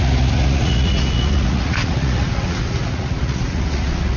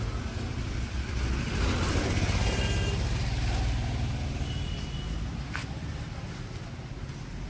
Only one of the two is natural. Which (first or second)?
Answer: second